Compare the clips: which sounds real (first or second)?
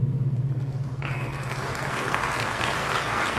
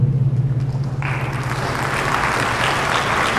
second